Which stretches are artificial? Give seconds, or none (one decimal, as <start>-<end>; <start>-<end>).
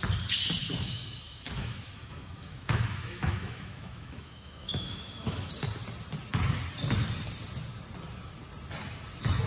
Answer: 0.6-5.5